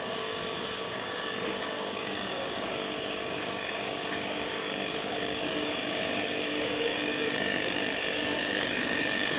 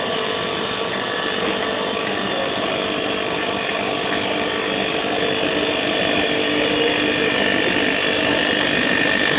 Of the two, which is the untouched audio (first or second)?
second